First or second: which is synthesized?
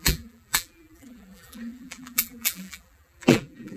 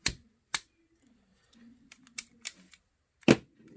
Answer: first